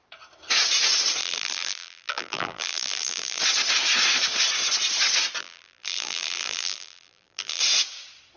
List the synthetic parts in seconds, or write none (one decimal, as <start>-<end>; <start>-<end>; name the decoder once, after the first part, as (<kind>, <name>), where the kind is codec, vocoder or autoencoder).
1.2-3.4 (vocoder, BigVGAN v2); 5.4-7.6